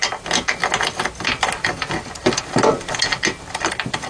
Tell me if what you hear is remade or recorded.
recorded